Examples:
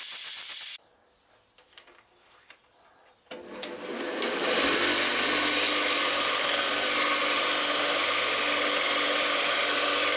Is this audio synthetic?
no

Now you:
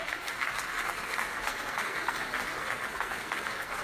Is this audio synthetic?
yes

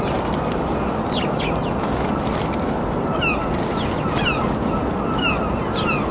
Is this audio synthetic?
no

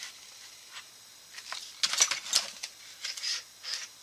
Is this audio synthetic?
no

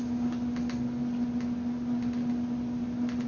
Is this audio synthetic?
no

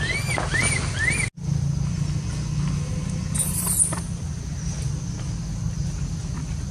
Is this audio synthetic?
no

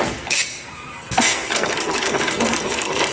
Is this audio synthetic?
yes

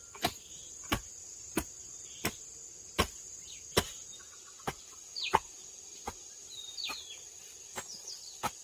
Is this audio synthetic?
no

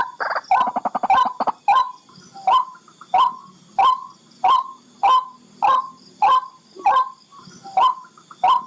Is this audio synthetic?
no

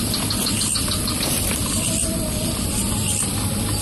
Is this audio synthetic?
no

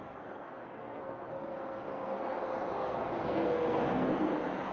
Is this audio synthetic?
yes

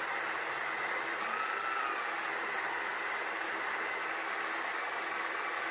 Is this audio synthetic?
no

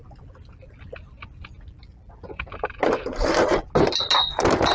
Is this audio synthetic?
no